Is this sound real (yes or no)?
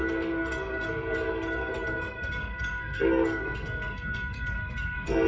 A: no